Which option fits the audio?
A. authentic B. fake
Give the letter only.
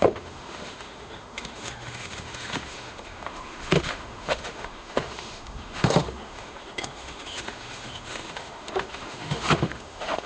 B